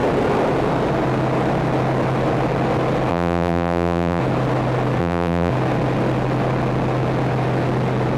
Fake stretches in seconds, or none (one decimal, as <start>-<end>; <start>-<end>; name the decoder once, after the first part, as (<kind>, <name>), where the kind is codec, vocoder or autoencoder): 3.1-4.2 (vocoder, BigVGAN v2); 5.0-5.5